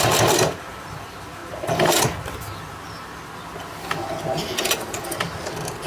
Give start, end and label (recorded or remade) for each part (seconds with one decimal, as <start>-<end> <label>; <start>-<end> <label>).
0.0-5.9 recorded